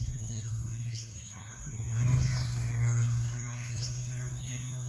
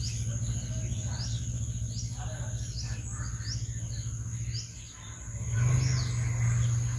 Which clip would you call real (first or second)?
second